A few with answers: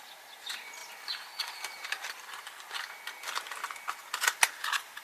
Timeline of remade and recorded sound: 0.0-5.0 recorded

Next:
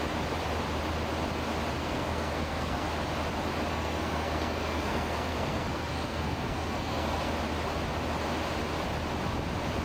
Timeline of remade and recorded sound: 0.0-1.8 recorded; 1.8-2.9 remade; 2.9-3.7 recorded; 3.7-7.3 remade; 7.3-9.8 recorded

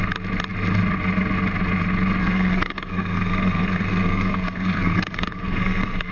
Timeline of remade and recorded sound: 0.0-2.2 recorded; 2.2-6.1 remade

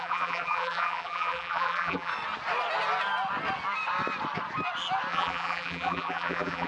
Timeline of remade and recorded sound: 0.0-2.1 remade; 2.1-5.1 recorded; 5.1-6.7 remade

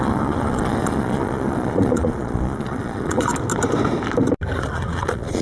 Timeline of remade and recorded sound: 0.0-3.3 remade; 3.3-4.6 recorded; 4.6-5.4 remade

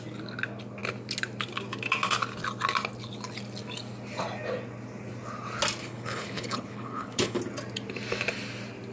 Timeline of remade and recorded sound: 0.0-5.8 recorded; 5.8-7.4 remade; 7.4-8.9 recorded